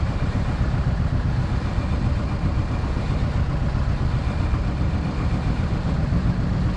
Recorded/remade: recorded